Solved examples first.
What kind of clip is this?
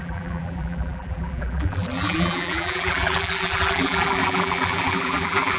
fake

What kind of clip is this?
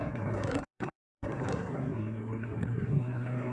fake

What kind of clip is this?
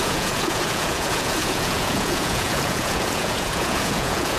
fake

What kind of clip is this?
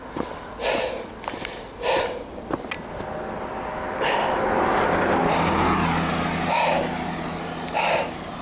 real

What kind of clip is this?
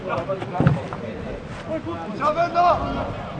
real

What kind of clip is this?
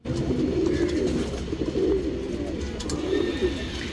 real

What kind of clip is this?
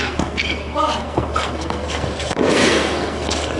fake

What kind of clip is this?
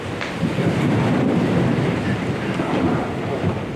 real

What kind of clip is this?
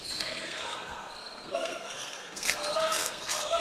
fake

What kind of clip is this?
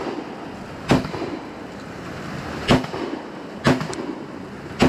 real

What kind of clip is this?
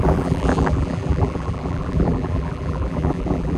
fake